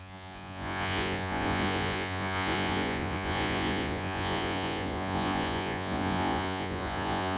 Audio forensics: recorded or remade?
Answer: remade